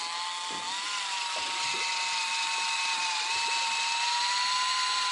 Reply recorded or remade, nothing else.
recorded